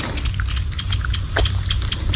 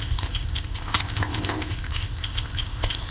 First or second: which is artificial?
second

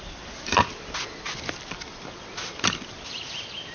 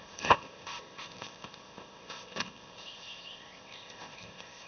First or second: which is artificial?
second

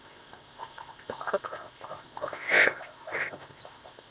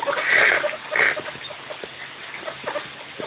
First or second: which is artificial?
first